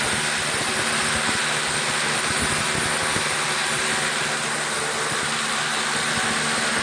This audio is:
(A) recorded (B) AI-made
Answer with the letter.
A